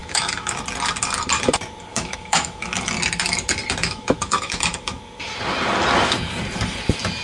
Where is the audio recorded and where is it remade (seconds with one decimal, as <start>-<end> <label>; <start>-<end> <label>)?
0.0-0.6 remade; 0.6-1.9 recorded; 1.9-2.9 remade; 2.9-3.8 recorded; 3.8-5.0 remade; 5.0-7.2 recorded

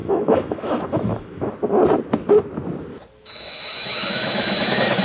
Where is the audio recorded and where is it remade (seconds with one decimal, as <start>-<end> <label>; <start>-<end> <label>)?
0.0-1.5 remade; 1.5-3.2 recorded; 3.2-5.0 remade

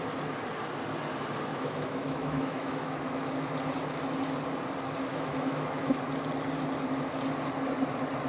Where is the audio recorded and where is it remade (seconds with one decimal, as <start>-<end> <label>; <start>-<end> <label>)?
0.0-1.5 recorded; 1.5-3.3 remade; 3.3-5.1 recorded; 5.1-5.9 remade; 5.9-8.3 recorded

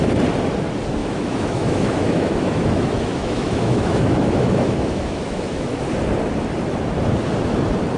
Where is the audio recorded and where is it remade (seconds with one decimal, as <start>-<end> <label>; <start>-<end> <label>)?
0.0-1.0 recorded; 1.0-5.8 remade; 5.8-8.0 recorded